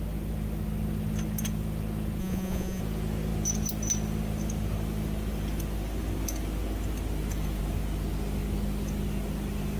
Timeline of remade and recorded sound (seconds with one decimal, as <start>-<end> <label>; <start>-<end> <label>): 0.0-2.2 recorded; 2.2-2.8 remade; 2.8-9.8 recorded